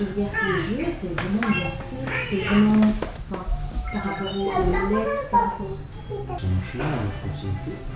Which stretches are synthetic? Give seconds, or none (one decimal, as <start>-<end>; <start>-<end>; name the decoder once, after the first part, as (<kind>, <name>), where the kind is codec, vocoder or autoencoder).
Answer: none